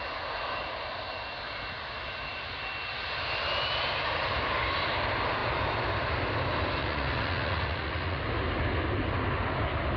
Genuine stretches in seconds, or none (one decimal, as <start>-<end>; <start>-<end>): 0.0-6.8; 8.2-10.0